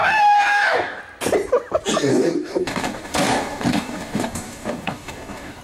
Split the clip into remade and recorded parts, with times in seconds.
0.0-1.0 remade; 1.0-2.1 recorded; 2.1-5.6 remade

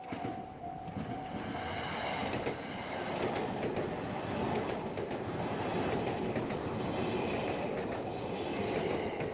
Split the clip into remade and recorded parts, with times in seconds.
0.0-9.3 recorded

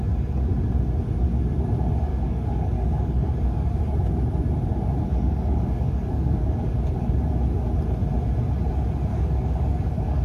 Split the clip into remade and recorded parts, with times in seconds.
0.0-2.1 recorded; 2.1-3.8 remade; 3.8-5.1 recorded; 5.1-7.1 remade; 7.1-9.1 recorded; 9.1-10.2 remade

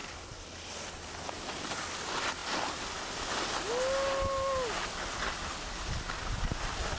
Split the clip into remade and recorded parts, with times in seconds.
0.0-7.0 recorded

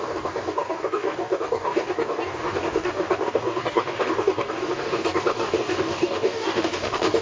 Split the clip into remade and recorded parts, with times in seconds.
0.0-7.2 remade